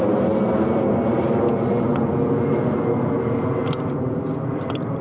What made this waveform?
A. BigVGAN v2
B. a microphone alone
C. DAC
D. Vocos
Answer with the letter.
B